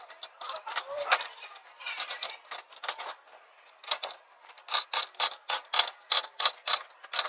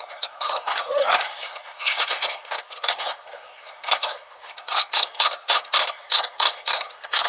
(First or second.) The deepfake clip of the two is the second